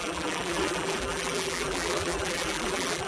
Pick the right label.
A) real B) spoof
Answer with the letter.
B